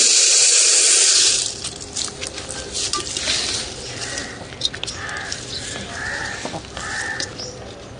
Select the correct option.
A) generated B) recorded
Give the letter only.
B